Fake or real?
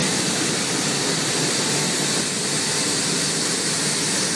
real